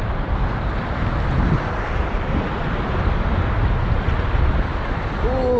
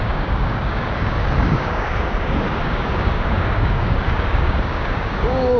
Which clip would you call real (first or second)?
first